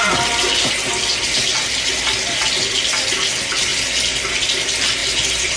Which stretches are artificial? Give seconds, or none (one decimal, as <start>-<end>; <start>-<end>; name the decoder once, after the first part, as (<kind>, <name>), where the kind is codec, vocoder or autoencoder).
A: 3.7-4.5 (vocoder, BigVGAN v2); 5.0-5.6